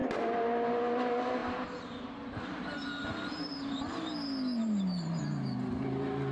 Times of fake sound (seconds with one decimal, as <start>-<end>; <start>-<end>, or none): none